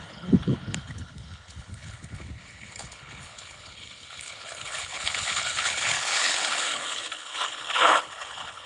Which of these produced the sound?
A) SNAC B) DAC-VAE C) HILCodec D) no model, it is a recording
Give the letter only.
C